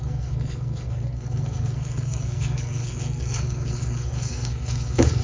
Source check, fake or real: fake